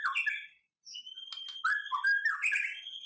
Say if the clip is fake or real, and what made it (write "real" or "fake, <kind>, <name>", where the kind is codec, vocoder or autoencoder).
real